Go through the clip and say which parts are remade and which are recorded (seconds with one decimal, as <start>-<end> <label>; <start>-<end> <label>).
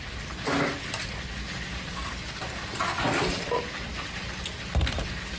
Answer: 0.0-5.4 recorded